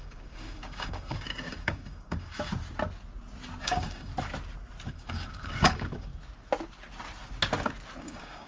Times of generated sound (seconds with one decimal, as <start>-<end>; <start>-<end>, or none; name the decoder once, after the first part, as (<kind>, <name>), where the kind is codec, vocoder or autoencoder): 0.0-2.5 (codec, DAC); 3.6-4.1; 4.9-6.1; 8.0-8.5